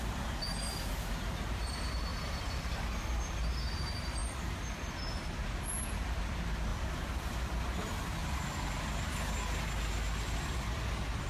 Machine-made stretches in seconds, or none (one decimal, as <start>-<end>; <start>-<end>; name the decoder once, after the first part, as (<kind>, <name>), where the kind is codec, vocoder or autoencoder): 2.1-2.7 (vocoder, BigVGAN v2); 4.2-4.9; 6.7-7.3; 8.2-8.9